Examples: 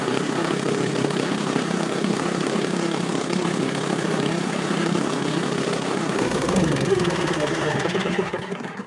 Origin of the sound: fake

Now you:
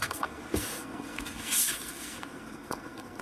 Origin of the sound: fake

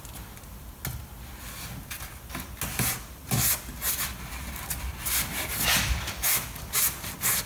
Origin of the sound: real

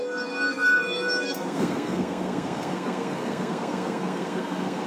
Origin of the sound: fake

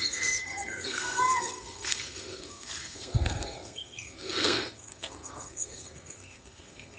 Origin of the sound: fake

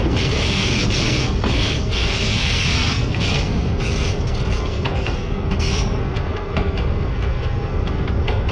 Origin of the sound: fake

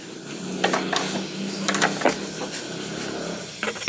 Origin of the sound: real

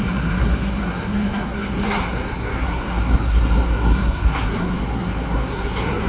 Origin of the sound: fake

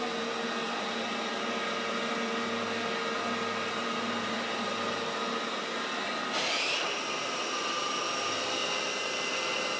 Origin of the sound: real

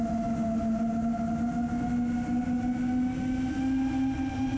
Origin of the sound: real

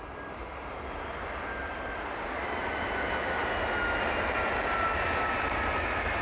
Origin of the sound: real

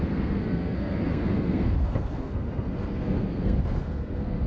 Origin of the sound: fake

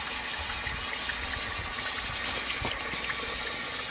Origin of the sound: real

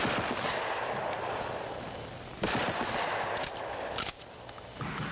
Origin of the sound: real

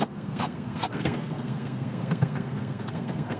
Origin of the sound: fake